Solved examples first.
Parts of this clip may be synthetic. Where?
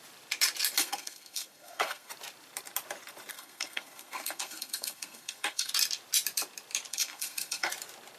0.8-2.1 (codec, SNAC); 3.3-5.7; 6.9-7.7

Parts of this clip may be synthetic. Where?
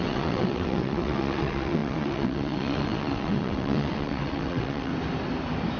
0.0-4.9 (vocoder, WaveNeXt)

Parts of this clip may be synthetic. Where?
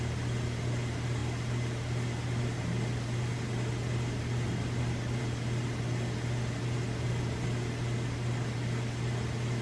1.2-5.2 (vocoder, BigVGAN v2)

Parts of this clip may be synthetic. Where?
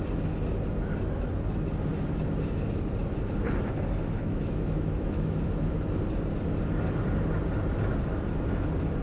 4.2-5.4 (autoencoder, DAC-VAE)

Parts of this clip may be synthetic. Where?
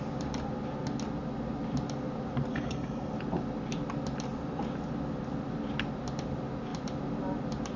2.5-3.1 (codec, SNAC)